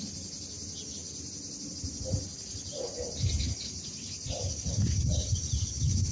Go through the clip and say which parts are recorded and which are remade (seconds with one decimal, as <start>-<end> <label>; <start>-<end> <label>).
0.0-2.7 recorded; 2.7-6.1 remade